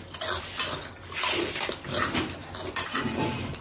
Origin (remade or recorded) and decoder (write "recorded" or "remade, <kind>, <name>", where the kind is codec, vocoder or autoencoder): recorded